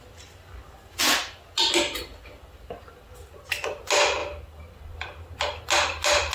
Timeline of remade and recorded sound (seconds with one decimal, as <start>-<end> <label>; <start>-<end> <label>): 0.0-6.3 recorded